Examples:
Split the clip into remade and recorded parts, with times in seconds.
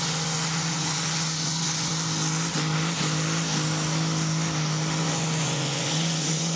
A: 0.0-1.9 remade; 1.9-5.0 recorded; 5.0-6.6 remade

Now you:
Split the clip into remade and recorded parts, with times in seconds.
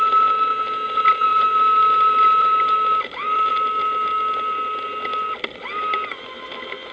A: 0.0-1.3 recorded; 1.3-3.5 remade; 3.5-6.9 recorded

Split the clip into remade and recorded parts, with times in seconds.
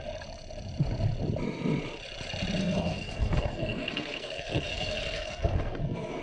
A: 0.0-2.6 recorded; 2.6-6.2 remade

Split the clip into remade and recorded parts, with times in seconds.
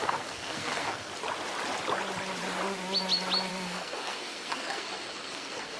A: 0.0-1.1 remade; 1.1-3.5 recorded; 3.5-5.8 remade